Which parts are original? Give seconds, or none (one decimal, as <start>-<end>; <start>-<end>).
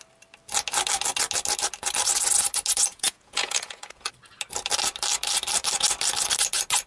0.0-2.9; 4.1-6.9